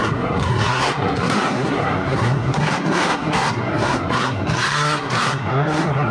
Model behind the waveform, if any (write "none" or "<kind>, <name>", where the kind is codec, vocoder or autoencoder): codec, SNAC